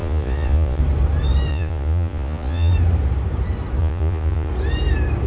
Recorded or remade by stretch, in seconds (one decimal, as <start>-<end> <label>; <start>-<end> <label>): 0.0-0.8 remade; 0.8-1.5 recorded; 1.5-2.7 remade; 2.7-3.8 recorded; 3.8-4.5 remade; 4.5-5.3 recorded